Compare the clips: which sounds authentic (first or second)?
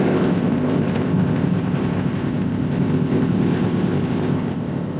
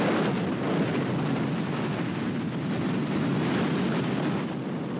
second